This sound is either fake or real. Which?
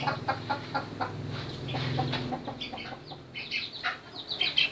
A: real